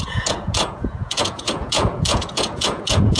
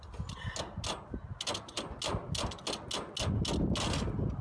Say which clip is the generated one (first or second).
first